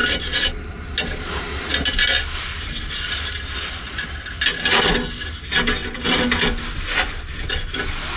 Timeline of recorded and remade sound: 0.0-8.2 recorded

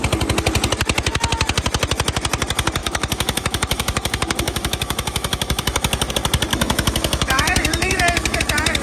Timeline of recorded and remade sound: 0.0-2.8 recorded; 2.8-6.1 remade; 6.1-6.5 recorded; 6.5-8.4 remade; 8.4-8.8 recorded

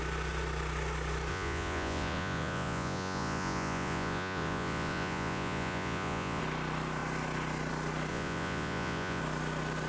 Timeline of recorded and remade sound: 0.0-1.3 recorded; 1.3-6.4 remade; 6.4-8.1 recorded; 8.1-9.2 remade; 9.2-9.9 recorded